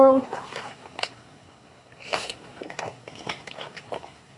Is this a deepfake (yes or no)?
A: yes